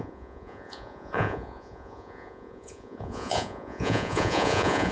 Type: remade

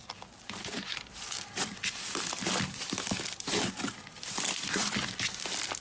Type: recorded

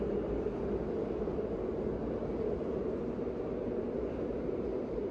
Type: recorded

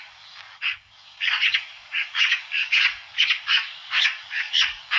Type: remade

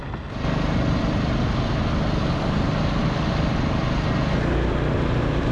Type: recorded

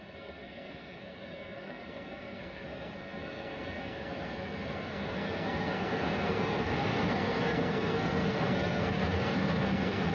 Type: remade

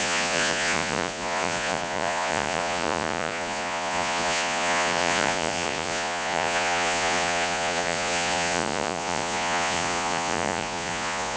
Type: remade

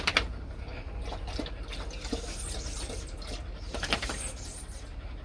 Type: recorded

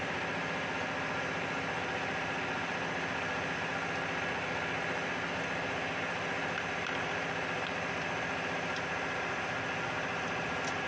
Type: recorded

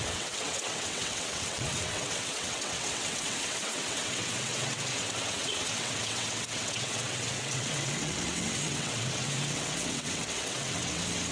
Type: remade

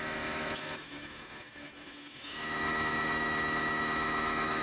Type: remade